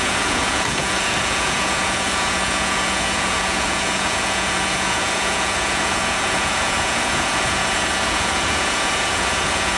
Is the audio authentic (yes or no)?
no